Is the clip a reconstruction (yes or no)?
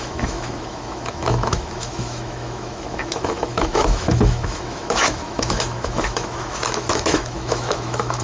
yes